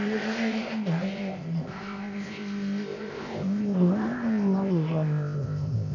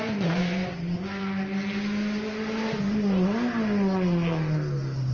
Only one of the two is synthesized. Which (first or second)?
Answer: first